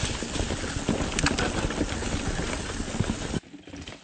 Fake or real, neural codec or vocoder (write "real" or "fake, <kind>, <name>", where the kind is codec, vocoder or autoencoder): real